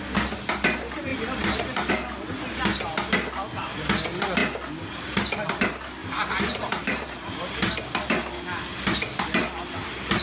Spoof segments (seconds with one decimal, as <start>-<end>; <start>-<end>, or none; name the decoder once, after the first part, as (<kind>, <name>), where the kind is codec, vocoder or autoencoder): 1.1-1.9 (vocoder, BigVGAN v2); 6.0-7.3